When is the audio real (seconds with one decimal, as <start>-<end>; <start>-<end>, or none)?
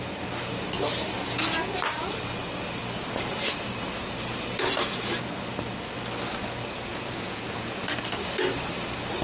0.0-6.9; 7.8-9.2